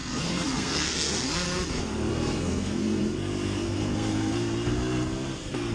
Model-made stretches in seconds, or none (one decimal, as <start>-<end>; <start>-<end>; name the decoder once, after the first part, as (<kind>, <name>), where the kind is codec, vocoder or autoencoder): 0.0-1.6 (codec, SNAC); 2.1-5.7